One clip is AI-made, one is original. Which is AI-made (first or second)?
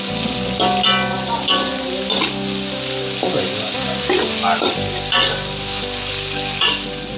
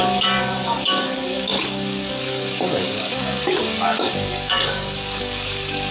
second